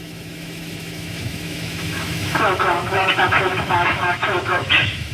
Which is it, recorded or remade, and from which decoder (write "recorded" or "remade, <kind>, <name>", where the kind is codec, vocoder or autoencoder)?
remade, autoencoder, DAC-VAE